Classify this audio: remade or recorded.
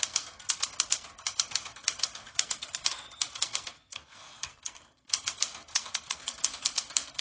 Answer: remade